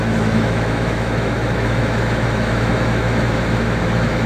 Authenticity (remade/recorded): remade